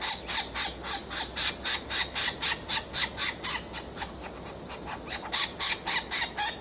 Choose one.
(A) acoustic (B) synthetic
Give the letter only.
A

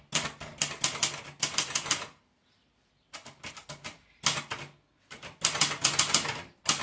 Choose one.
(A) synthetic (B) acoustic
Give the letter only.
B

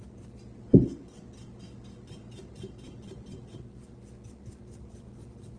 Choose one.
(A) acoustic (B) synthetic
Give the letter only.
A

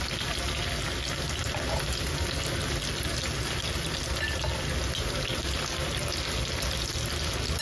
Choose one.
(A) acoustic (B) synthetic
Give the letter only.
A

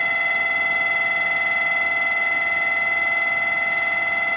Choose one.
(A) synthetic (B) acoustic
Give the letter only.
B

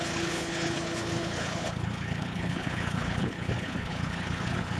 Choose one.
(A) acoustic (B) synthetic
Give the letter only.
B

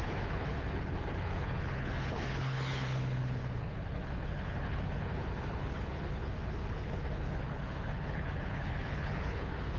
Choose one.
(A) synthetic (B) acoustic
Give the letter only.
A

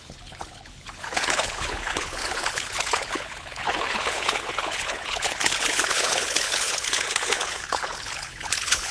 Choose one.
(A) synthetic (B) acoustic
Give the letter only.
A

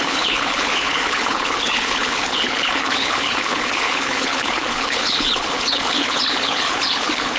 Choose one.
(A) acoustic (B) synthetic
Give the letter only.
B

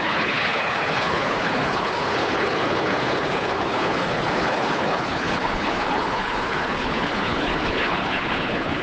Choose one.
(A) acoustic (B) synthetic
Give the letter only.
B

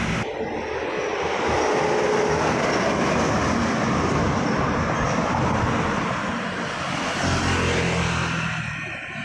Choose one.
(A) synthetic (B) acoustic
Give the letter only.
B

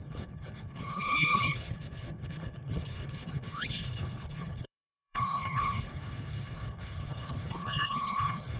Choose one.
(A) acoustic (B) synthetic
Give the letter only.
B